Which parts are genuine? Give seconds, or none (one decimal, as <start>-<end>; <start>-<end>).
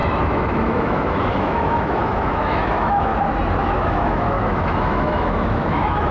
3.1-3.6